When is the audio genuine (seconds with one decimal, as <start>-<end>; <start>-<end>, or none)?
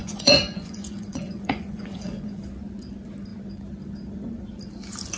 2.4-5.2